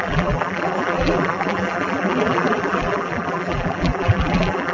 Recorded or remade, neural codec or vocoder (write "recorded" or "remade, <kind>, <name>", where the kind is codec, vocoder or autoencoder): remade, vocoder, BigVGAN v2